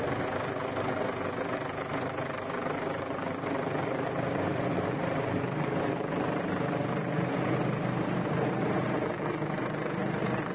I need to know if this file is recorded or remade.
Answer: recorded